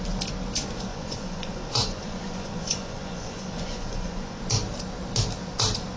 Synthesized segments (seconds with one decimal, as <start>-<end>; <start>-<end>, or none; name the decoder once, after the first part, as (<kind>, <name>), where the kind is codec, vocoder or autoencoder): 0.9-4.4 (vocoder, Vocos)